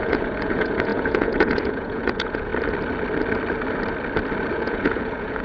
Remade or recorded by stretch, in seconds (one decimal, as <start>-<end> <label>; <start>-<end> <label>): 0.0-2.5 remade; 2.5-4.5 recorded; 4.5-5.4 remade